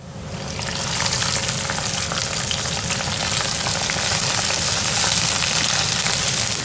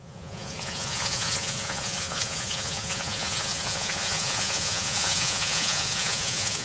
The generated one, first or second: second